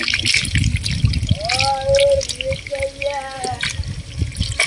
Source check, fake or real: real